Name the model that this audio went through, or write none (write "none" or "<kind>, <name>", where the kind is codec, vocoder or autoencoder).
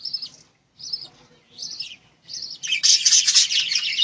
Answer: none